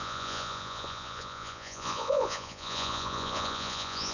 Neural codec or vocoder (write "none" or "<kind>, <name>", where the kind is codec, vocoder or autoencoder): vocoder, Vocos